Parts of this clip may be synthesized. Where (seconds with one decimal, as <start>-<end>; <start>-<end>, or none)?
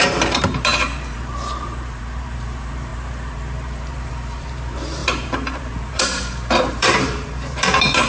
0.0-8.1